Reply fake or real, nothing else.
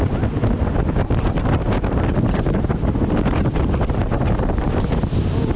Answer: real